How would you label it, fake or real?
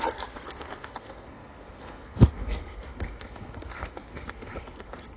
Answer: fake